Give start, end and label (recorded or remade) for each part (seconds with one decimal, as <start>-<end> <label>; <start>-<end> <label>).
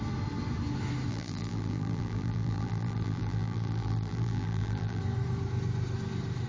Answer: 0.0-1.1 recorded; 1.1-5.0 remade; 5.0-6.5 recorded